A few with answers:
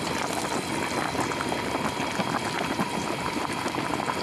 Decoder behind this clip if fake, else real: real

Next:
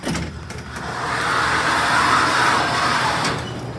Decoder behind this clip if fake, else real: real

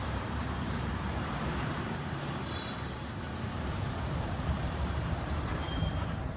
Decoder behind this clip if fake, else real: fake, vocoder, BigVGAN v2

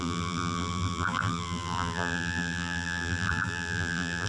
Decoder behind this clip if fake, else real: fake, vocoder, BigVGAN v2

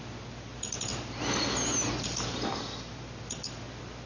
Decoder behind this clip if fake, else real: real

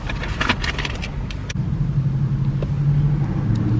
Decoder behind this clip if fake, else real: real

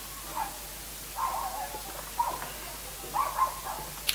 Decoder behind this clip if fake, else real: real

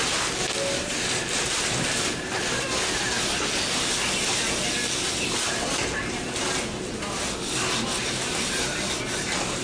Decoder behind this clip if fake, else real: real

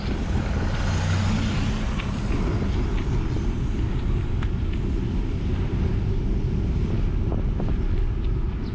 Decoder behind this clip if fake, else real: real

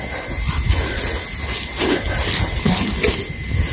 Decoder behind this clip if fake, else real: real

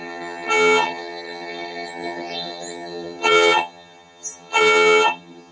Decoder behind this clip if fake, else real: fake, vocoder, HiFi-GAN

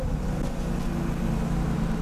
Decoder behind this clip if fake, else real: real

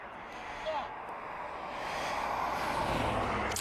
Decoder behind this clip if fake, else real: real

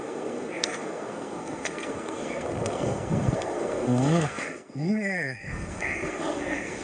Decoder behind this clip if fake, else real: fake, codec, SNAC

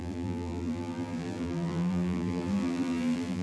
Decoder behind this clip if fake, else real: fake, vocoder, BigVGAN v2